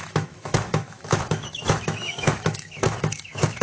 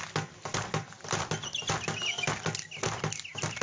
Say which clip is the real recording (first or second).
second